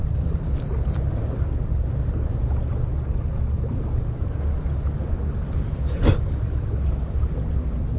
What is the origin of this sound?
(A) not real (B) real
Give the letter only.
B